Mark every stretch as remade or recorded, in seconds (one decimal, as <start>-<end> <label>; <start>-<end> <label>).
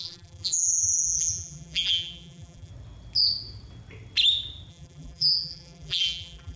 0.0-2.7 remade; 2.7-4.7 recorded; 4.7-6.6 remade